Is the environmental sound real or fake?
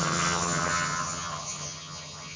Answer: fake